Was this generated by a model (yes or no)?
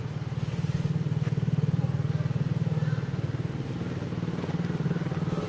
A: no